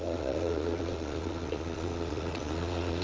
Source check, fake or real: fake